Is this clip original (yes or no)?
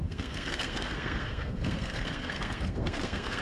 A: no